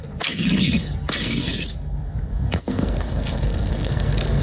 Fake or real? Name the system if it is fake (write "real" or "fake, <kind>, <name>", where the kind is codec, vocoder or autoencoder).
fake, codec, SNAC